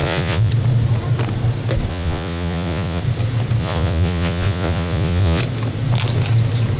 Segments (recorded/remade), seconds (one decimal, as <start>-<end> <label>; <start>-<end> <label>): 0.0-0.5 remade; 0.5-1.9 recorded; 1.9-3.0 remade; 3.0-3.6 recorded; 3.6-5.4 remade; 5.4-6.8 recorded